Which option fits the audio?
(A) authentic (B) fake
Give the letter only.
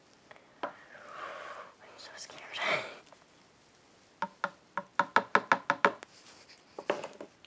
A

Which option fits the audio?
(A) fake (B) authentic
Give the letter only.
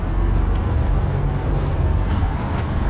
A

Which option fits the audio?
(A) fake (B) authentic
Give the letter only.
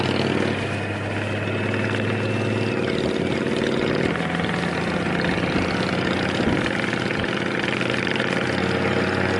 B